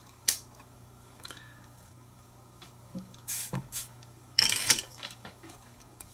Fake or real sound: fake